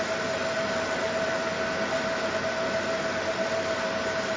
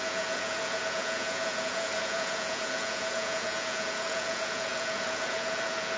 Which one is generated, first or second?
second